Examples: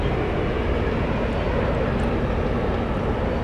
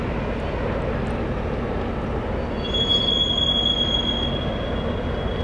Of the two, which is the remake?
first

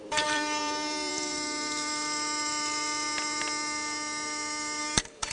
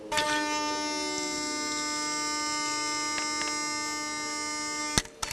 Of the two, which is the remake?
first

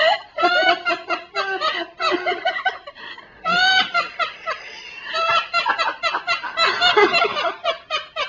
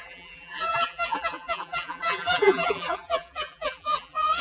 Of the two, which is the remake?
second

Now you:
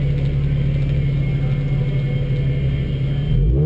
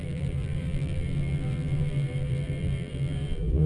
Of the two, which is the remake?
second